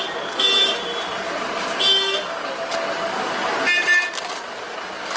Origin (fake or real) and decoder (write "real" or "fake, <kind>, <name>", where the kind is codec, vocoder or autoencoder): real